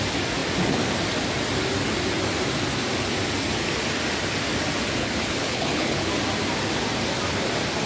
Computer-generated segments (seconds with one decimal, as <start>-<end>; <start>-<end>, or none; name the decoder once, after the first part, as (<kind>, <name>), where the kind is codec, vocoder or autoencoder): 5.0-6.1 (codec, HILCodec)